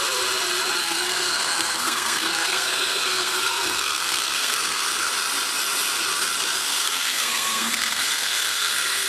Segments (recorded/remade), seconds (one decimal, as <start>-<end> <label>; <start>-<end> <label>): 0.0-0.8 recorded; 0.8-5.1 remade; 5.1-6.6 recorded; 6.6-9.1 remade